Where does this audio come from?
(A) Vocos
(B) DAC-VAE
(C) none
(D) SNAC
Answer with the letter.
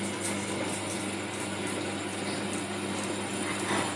C